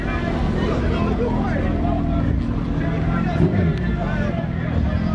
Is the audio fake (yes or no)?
no